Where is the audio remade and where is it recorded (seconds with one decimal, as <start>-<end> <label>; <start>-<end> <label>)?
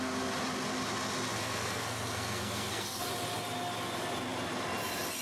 0.0-1.4 recorded; 1.4-3.1 remade; 3.1-5.2 recorded